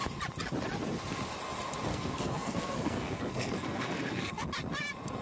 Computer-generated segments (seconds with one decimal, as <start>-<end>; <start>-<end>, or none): 1.9-4.3